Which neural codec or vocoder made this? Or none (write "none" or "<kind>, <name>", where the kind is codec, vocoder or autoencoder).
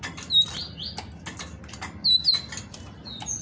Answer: none